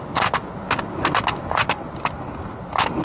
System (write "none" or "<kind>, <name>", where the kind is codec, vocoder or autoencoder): none